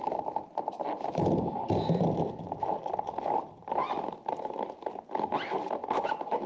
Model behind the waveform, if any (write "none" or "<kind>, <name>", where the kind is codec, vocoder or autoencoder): none